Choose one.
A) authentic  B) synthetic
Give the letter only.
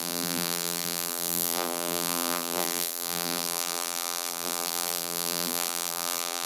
B